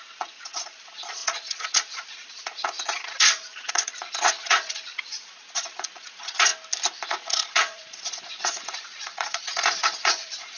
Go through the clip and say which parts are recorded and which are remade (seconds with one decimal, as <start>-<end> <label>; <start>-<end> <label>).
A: 0.0-6.5 remade; 6.5-7.1 recorded; 7.1-10.6 remade